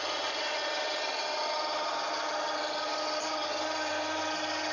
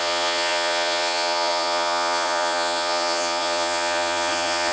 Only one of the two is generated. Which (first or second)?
second